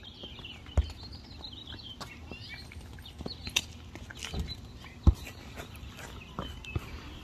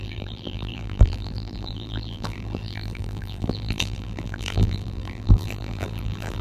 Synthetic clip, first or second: second